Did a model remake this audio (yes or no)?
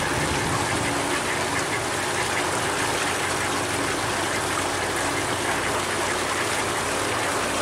no